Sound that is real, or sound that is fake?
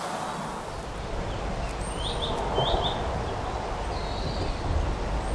real